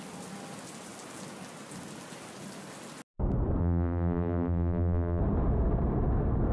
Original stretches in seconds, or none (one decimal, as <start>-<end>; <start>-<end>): 0.0-3.6; 5.2-6.5